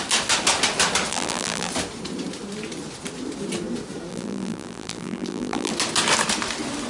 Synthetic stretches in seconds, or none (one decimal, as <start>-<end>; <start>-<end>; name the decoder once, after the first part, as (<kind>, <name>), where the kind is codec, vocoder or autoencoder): 1.1-1.7 (vocoder, BigVGAN v2); 4.1-5.7